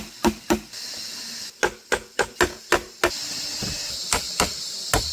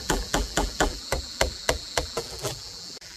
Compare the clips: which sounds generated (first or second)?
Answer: second